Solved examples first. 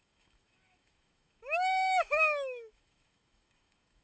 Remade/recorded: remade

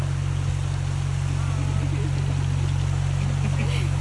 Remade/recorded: recorded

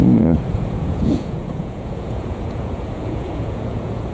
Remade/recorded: remade